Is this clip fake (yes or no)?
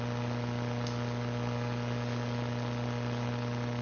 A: no